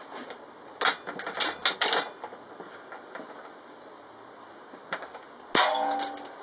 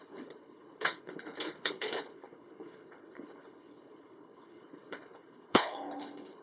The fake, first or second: second